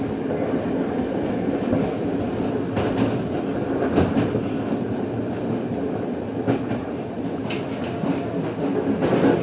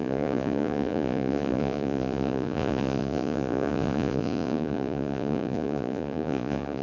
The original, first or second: first